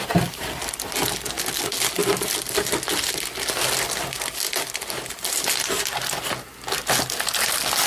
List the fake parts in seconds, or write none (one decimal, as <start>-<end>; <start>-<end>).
none